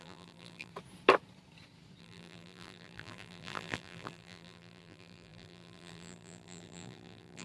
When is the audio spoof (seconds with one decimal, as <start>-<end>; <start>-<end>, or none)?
0.0-0.7; 2.0-7.4

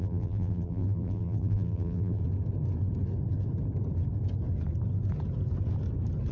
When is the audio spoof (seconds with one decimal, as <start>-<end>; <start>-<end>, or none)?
0.0-2.2

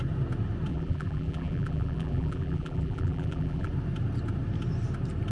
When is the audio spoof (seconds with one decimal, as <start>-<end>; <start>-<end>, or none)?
0.7-3.7

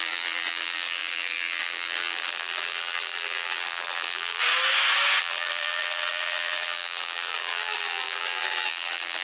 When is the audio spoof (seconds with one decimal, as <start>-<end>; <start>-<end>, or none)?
0.0-4.4; 5.2-9.2

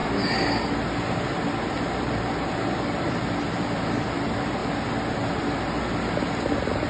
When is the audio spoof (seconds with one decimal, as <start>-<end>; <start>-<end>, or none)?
3.1-4.6; 5.2-6.9

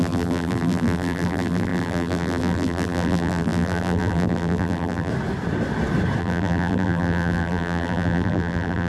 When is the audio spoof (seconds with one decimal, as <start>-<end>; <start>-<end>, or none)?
0.0-5.1; 6.2-8.9

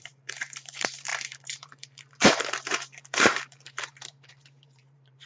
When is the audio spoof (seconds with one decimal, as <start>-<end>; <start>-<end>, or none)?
0.0-5.3

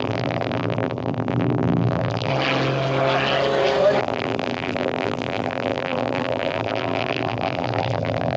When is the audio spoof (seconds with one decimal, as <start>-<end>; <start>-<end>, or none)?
0.0-2.3; 4.0-8.4